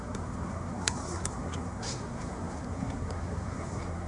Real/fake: fake